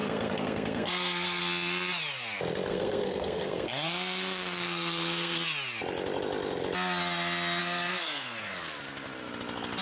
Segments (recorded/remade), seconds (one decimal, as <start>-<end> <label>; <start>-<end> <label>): 0.0-1.4 remade; 1.4-2.7 recorded; 2.7-5.4 remade; 5.4-7.6 recorded; 7.6-8.5 remade; 8.5-9.8 recorded